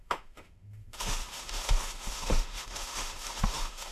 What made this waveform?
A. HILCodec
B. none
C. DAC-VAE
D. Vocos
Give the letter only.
C